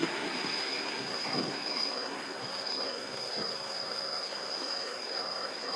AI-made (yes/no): yes